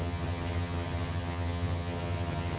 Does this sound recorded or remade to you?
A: remade